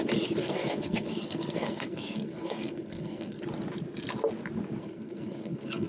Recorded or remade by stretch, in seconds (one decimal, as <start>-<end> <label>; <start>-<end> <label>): 0.0-0.4 recorded; 0.4-3.4 remade; 3.4-4.8 recorded; 4.8-5.9 remade